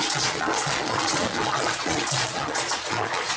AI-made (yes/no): yes